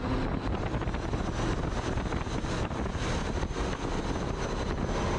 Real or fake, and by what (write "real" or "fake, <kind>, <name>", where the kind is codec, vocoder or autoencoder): real